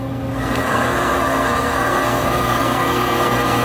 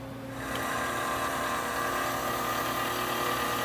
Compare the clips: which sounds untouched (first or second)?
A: second